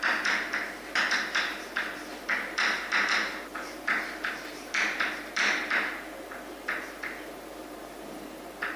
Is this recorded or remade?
remade